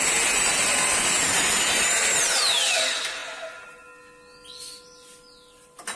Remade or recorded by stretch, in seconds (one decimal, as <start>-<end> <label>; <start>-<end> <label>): 0.0-6.0 recorded